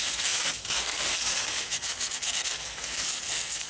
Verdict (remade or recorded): remade